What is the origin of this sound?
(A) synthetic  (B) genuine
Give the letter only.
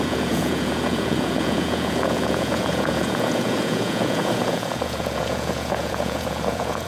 A